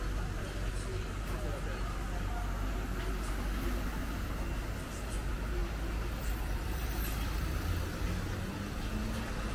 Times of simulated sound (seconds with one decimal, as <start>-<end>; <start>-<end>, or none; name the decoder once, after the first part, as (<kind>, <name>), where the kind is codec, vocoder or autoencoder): 5.6-7.7 (vocoder, BigVGAN v2)